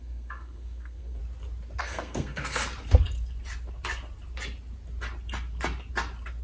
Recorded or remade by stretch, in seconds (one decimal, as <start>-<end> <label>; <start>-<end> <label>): 0.0-1.2 remade; 1.2-1.8 recorded; 1.8-2.6 remade; 2.6-6.4 recorded